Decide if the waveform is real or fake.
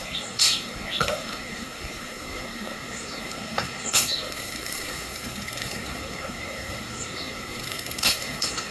fake